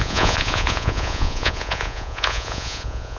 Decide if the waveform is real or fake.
fake